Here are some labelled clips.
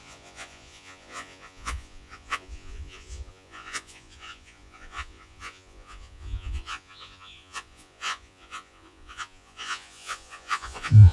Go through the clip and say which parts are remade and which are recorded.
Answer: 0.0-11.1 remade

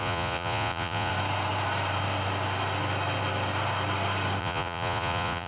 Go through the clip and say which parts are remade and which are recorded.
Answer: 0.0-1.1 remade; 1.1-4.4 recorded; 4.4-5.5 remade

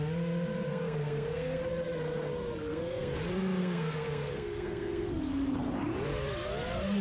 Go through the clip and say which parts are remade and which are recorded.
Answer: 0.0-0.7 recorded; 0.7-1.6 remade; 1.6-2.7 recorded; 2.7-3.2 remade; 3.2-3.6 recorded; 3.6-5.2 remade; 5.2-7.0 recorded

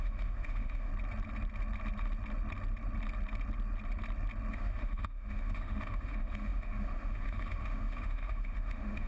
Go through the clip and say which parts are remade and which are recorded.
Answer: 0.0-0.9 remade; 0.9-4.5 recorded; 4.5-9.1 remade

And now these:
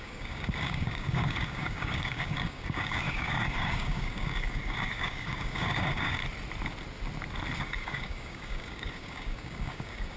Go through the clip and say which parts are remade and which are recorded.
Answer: 0.0-6.2 remade; 6.2-7.6 recorded; 7.6-10.2 remade

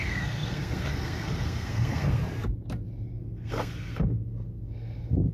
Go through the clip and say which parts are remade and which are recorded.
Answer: 0.0-2.2 remade; 2.2-3.2 recorded; 3.2-5.3 remade

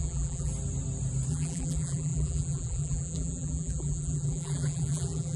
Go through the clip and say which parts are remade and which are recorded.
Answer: 0.0-0.5 remade; 0.5-1.3 recorded; 1.3-5.4 remade